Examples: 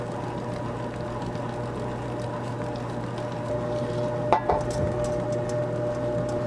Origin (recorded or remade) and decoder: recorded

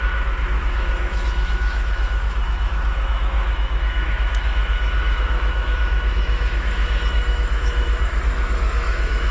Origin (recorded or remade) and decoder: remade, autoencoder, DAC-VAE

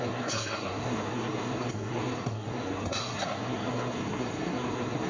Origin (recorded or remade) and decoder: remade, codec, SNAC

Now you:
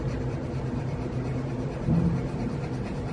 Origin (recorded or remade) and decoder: recorded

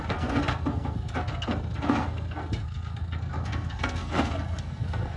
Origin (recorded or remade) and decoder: remade, codec, SNAC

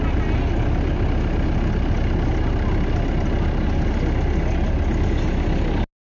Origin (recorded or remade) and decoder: recorded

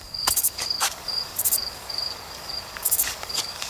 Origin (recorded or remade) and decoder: remade, codec, DAC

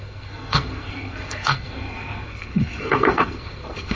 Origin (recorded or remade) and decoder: remade, codec, SNAC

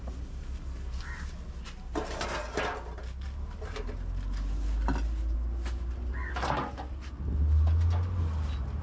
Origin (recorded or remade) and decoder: recorded